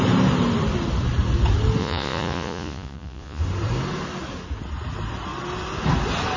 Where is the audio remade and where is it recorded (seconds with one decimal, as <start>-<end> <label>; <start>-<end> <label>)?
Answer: 0.0-1.8 recorded; 1.8-3.4 remade; 3.4-6.4 recorded